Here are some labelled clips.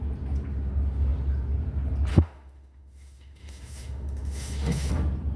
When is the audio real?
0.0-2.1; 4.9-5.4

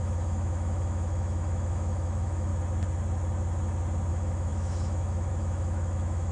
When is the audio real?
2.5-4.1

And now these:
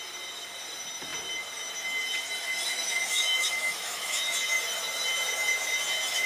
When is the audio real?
0.0-2.7; 4.2-6.3